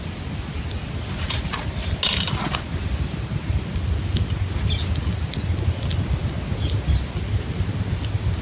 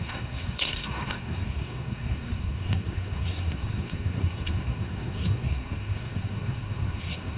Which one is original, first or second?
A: first